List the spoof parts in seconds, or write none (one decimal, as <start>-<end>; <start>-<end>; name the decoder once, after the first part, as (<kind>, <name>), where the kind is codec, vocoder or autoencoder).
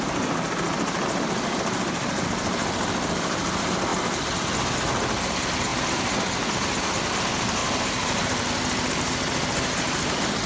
7.6-8.5 (vocoder, BigVGAN v2)